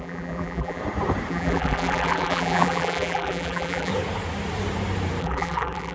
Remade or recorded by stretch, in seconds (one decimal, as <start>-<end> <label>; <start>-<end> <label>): 0.0-0.8 remade; 0.8-1.3 recorded; 1.3-3.9 remade; 3.9-5.2 recorded; 5.2-5.9 remade